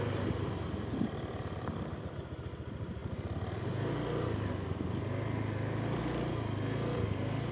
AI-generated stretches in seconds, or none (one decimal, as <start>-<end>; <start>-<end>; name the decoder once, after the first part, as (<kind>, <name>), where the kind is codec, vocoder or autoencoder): none